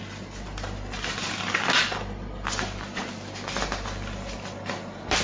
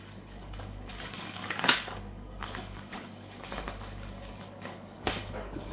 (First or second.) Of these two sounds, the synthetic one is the second